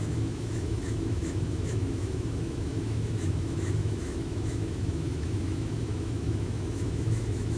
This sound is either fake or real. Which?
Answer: fake